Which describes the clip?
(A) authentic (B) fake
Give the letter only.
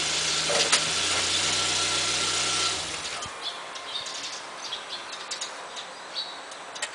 A